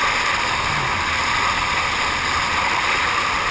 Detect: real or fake real